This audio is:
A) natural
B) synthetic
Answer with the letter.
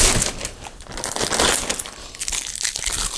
A